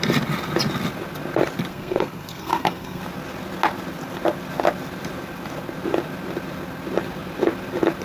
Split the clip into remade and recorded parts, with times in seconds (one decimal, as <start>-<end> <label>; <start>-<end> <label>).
0.0-1.7 recorded; 1.7-3.0 remade; 3.0-8.0 recorded